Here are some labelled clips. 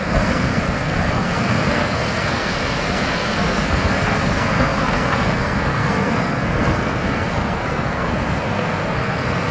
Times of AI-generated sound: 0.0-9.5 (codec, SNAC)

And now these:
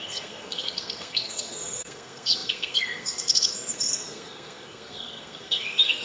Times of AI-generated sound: 0.0-6.0 (codec, SNAC)

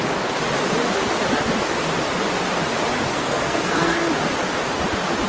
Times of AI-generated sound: 3.1-4.1 (codec, SNAC)

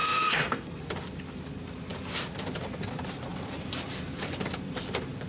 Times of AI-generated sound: 0.0-0.8 (codec, SNAC)